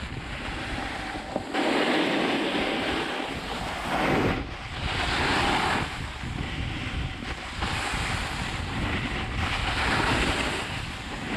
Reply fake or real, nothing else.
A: real